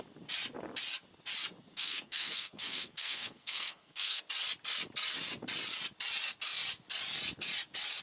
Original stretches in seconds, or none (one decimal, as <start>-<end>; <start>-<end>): 0.0-1.7; 4.2-8.0